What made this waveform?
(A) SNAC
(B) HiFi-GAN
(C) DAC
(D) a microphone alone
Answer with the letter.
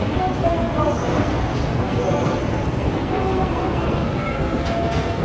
A